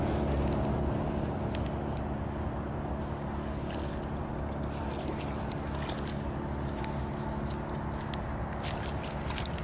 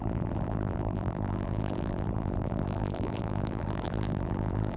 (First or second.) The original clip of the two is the first